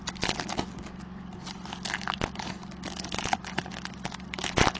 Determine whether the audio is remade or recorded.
recorded